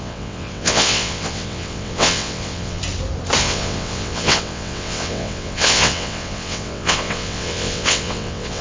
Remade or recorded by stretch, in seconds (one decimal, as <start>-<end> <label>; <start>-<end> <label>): 0.0-2.8 remade; 2.8-3.4 recorded; 3.4-8.6 remade

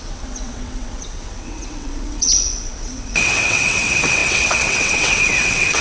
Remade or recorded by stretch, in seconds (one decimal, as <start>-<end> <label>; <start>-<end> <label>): 0.0-5.8 remade

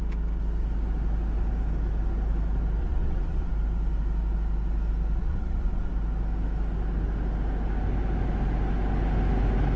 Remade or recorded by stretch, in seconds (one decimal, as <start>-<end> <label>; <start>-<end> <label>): 0.0-2.8 recorded; 2.8-3.5 remade; 3.5-5.2 recorded; 5.2-5.9 remade; 5.9-9.8 recorded

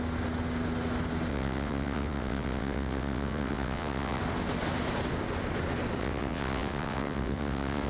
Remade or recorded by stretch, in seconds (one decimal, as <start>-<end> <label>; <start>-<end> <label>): 0.0-1.3 recorded; 1.3-4.2 remade; 4.2-6.0 recorded; 6.0-7.9 remade

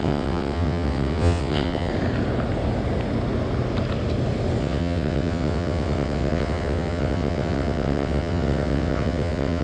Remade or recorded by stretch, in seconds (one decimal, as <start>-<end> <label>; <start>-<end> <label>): 0.0-1.9 remade; 1.9-4.6 recorded; 4.6-9.6 remade

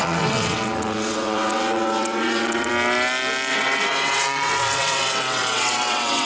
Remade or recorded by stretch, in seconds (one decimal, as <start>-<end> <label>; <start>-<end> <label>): 0.0-2.7 remade; 2.7-3.5 recorded; 3.5-6.3 remade